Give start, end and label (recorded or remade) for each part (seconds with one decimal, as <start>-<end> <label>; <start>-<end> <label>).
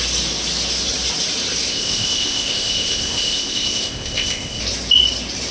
0.0-1.7 recorded; 1.7-4.6 remade; 4.6-5.5 recorded